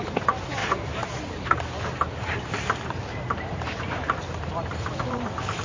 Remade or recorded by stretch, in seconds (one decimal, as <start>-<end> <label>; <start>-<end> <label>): 0.0-5.6 remade